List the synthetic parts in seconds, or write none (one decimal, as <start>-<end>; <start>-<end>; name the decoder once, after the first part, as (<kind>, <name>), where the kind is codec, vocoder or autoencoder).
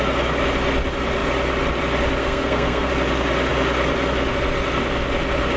2.2-2.9 (codec, SNAC)